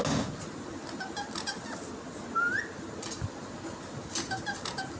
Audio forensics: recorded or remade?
recorded